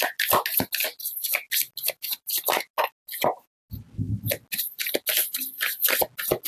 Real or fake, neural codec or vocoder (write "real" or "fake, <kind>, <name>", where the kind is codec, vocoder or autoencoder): real